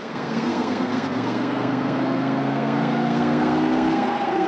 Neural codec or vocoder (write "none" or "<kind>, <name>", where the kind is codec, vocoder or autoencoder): codec, SNAC